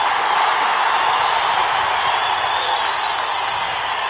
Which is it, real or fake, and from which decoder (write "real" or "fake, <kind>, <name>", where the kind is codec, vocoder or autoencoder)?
real